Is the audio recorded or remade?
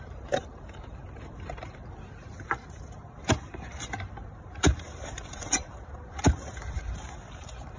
remade